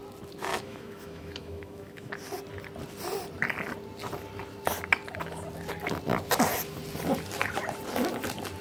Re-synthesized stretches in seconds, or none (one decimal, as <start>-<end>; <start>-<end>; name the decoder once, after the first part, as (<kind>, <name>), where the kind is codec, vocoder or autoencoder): 0.5-2.1 (autoencoder, DAC-VAE)